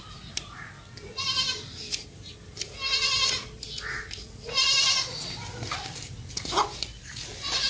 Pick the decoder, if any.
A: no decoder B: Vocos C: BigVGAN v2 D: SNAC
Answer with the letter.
A